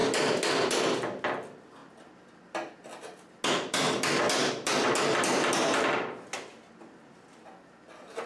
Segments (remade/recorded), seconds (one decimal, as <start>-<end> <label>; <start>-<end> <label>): 0.0-8.3 recorded